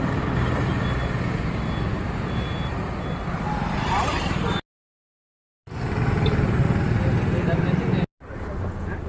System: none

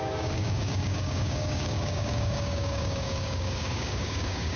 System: codec, DAC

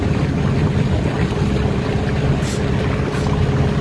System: none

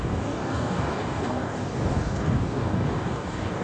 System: codec, DAC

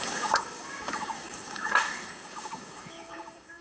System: codec, DAC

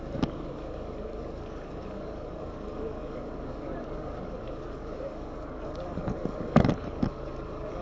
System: codec, DAC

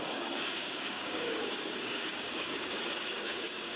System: codec, DAC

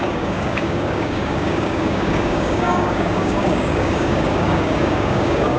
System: codec, DAC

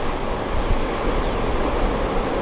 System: none